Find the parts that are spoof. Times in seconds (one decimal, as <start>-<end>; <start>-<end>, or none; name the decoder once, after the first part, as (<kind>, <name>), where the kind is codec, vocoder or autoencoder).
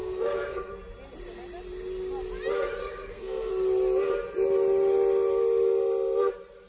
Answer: 0.0-0.7 (codec, SNAC); 2.8-3.5